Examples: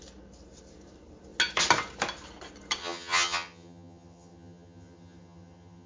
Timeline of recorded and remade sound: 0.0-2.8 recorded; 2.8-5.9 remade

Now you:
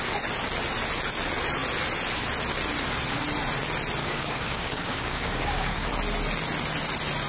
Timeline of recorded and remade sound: 0.0-4.0 recorded; 4.0-5.9 remade; 5.9-7.3 recorded

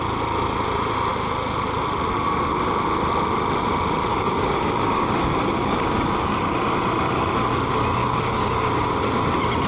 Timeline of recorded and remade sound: 0.0-4.1 recorded; 4.1-6.5 remade; 6.5-8.0 recorded; 8.0-8.9 remade; 8.9-9.7 recorded

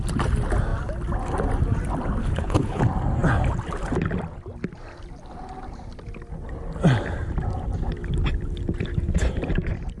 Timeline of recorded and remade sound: 0.0-2.2 recorded; 2.2-2.8 remade; 2.8-10.0 recorded

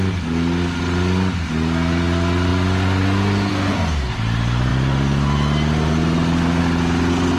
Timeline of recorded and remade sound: 0.0-7.4 recorded

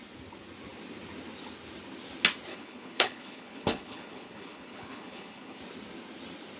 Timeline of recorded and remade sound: 0.0-2.5 recorded; 2.5-5.6 remade; 5.6-6.6 recorded